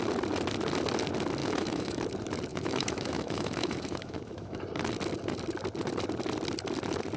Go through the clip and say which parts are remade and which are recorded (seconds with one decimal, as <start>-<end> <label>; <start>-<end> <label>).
0.0-1.4 recorded; 1.4-2.0 remade; 2.0-2.5 recorded; 2.5-4.6 remade; 4.6-7.2 recorded